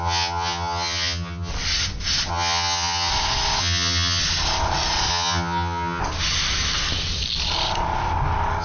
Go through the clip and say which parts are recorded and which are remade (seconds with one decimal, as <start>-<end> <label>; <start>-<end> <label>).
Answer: 0.0-1.5 remade; 1.5-2.3 recorded; 2.3-3.1 remade; 3.1-3.6 recorded; 3.6-4.2 remade; 4.2-5.1 recorded; 5.1-6.0 remade; 6.0-8.6 recorded

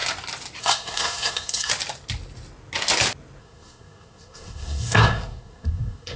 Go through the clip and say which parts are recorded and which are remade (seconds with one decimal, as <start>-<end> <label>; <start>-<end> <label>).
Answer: 0.0-0.6 recorded; 0.6-1.7 remade; 1.7-3.4 recorded; 3.4-6.2 remade